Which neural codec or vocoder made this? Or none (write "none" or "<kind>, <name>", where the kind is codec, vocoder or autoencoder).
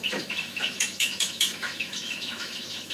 autoencoder, DAC-VAE